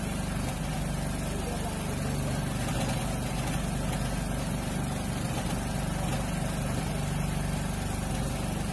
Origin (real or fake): real